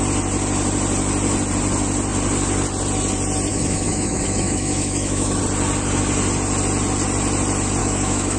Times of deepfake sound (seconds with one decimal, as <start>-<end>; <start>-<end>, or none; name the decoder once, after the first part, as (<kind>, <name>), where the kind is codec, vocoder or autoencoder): 3.5-5.4 (autoencoder, DAC-VAE); 7.8-8.4